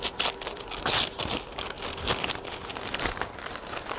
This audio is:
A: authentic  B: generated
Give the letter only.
A